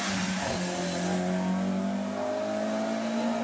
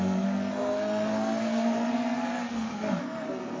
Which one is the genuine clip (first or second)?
first